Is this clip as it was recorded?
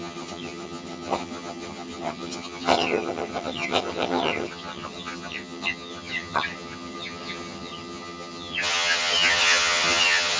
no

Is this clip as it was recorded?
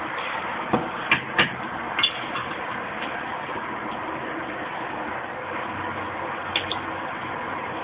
yes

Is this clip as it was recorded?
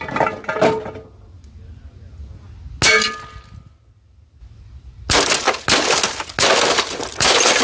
yes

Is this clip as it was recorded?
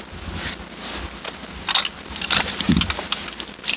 yes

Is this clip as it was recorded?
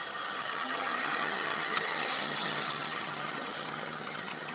no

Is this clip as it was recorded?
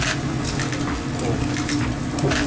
yes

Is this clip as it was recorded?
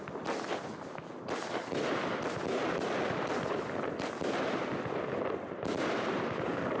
yes